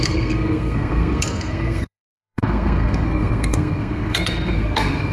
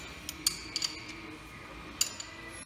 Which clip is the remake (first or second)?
first